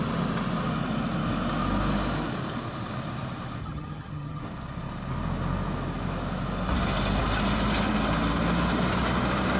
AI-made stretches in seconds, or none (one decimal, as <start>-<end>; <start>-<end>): 3.6-4.4

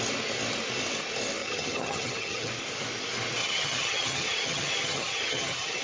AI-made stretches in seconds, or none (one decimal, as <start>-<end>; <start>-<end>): 1.4-2.5; 3.4-5.8

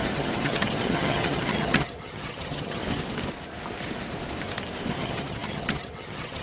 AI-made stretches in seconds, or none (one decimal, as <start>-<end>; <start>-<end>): 0.0-2.8; 5.0-6.4